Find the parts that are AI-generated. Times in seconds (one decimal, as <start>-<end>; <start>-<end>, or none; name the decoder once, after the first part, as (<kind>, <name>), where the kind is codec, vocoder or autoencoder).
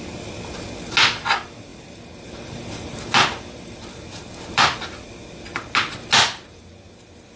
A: none